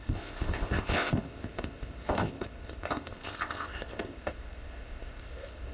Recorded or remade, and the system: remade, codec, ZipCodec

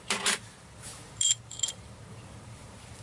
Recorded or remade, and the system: remade, vocoder, BigVGAN v2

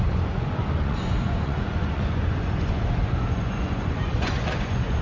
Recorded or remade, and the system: remade, vocoder, Vocos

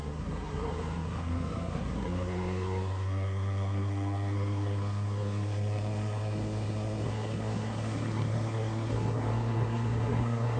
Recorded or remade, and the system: remade, codec, SNAC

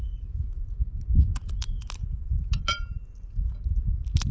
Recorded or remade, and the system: recorded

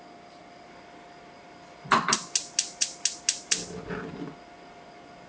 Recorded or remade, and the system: recorded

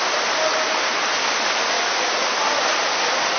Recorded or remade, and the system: recorded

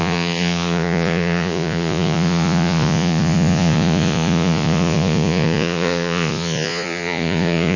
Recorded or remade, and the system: remade, vocoder, Vocos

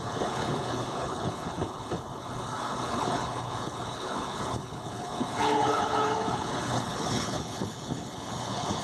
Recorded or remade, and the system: remade, codec, HILCodec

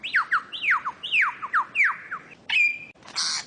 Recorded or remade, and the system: recorded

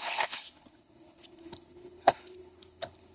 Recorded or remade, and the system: remade, codec, HILCodec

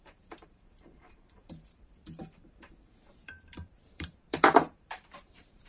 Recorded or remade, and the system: remade, vocoder, BigVGAN v2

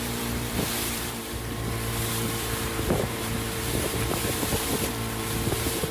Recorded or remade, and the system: remade, vocoder, BigVGAN v2